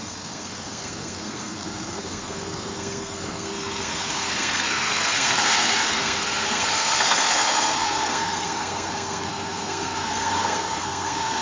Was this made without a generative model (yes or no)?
no